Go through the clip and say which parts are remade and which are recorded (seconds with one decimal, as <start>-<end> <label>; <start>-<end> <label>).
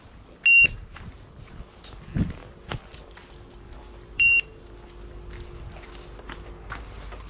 0.0-7.3 recorded